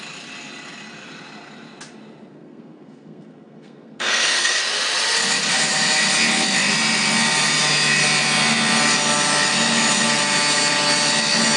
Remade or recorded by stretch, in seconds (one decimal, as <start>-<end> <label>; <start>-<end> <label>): 0.0-2.3 recorded; 2.3-4.6 remade; 4.6-11.6 recorded